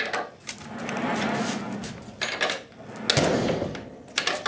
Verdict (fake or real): real